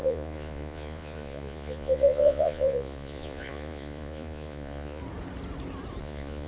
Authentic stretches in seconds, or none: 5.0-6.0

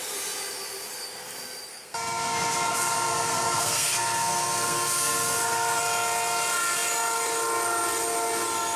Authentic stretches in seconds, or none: 0.0-1.7; 5.8-8.8